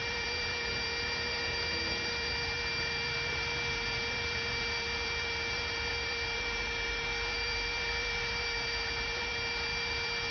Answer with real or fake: fake